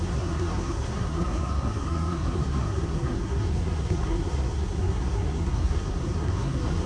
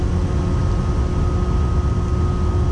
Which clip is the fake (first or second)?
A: first